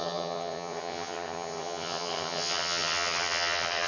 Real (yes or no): no